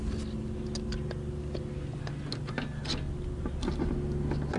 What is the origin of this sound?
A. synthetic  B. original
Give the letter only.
B